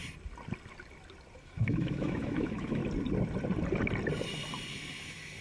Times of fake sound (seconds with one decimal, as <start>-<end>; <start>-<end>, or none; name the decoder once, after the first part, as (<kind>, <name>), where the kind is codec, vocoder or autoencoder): 1.4-2.8 (autoencoder, DAC-VAE); 4.7-5.4